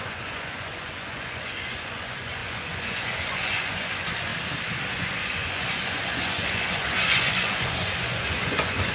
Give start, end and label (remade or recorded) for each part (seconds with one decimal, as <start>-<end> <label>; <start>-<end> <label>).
0.0-4.3 remade; 4.3-4.9 recorded; 4.9-8.9 remade